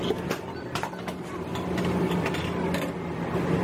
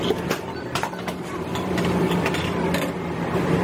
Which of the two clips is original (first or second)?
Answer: first